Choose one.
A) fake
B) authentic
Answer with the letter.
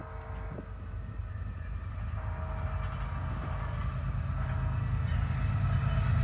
B